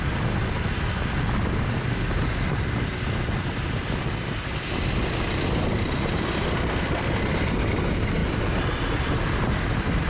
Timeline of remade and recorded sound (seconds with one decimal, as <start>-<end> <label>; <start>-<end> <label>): 0.0-10.1 recorded